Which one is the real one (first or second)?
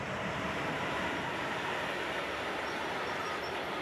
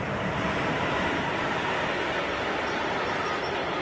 first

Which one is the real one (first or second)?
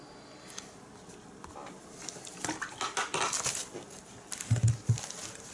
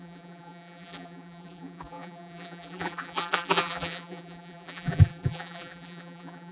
first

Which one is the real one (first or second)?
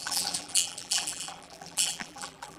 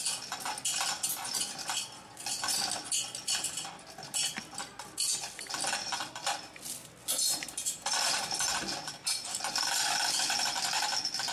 second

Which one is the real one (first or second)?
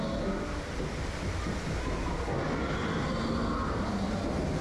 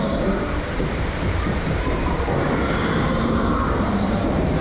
first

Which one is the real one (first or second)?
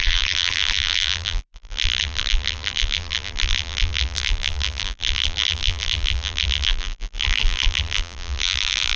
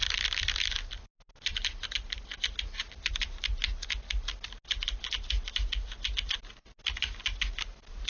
second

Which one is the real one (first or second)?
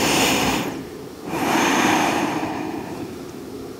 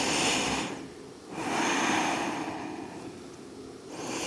second